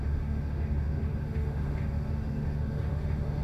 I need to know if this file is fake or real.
fake